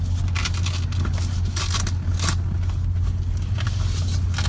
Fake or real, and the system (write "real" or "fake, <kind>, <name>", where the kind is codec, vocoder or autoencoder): real